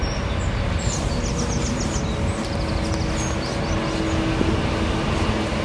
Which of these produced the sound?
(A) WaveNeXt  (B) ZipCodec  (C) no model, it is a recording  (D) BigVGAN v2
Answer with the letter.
C